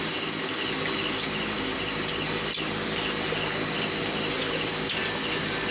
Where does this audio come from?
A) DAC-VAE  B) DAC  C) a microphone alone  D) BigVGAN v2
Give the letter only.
C